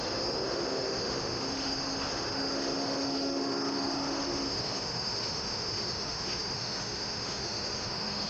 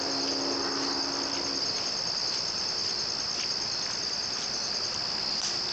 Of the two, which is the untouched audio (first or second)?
second